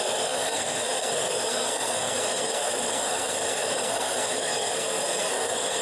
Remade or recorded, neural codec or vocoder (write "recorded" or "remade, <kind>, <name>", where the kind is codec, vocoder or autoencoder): remade, codec, SNAC